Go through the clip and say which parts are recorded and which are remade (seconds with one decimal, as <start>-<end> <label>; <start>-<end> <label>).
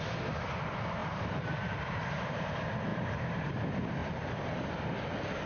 0.0-1.0 recorded; 1.0-2.5 remade; 2.5-2.9 recorded; 2.9-3.5 remade; 3.5-4.0 recorded; 4.0-4.7 remade; 4.7-5.5 recorded